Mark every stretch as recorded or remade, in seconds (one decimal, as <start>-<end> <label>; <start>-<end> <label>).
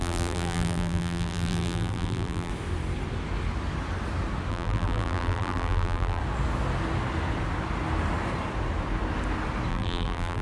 0.0-2.5 remade; 2.5-4.5 recorded; 4.5-6.2 remade; 6.2-9.7 recorded; 9.7-10.4 remade